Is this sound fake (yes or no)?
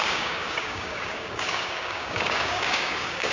yes